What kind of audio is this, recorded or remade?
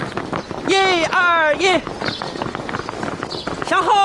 recorded